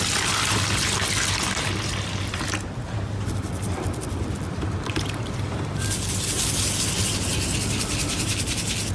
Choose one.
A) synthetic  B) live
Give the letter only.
B